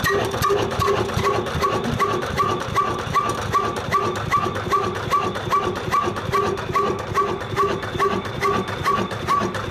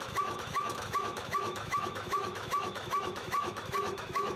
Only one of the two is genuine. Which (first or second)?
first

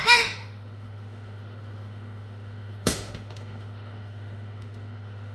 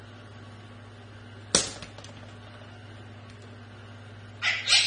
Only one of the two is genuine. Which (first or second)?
second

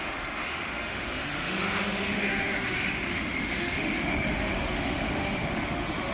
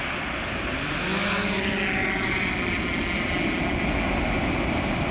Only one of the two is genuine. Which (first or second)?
second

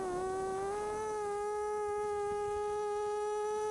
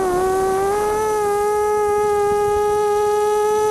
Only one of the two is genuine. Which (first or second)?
second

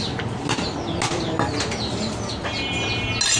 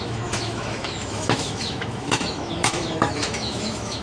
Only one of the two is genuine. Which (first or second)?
first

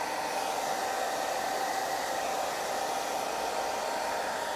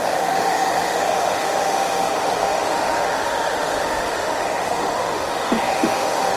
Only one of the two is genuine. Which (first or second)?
first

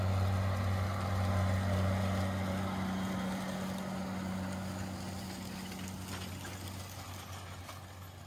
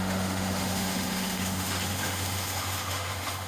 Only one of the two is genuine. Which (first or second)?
first